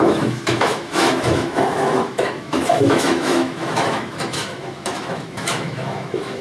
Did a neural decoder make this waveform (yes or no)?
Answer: yes